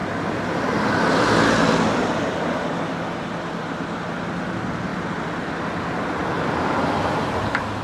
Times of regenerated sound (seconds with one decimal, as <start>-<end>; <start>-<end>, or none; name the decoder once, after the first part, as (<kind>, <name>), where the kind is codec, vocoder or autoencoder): none